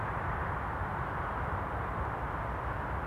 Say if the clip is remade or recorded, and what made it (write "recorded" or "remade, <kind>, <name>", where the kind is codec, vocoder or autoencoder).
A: recorded